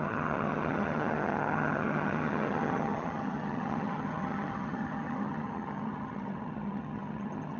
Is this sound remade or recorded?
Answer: remade